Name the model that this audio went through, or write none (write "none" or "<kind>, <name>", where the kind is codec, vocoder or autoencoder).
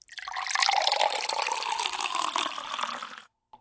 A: none